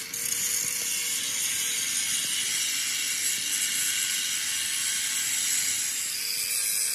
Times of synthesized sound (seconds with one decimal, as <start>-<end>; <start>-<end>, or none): none